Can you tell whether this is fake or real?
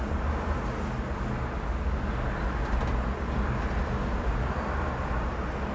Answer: real